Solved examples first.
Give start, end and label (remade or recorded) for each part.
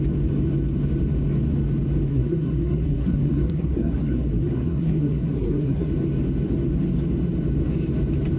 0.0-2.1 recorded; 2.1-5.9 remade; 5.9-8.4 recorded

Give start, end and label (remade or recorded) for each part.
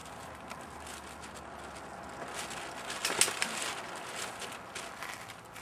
0.0-5.6 recorded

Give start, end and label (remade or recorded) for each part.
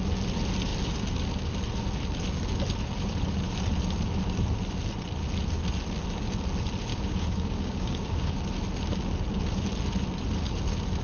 0.0-6.9 recorded; 6.9-8.3 remade; 8.3-11.0 recorded